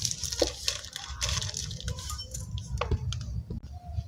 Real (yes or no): yes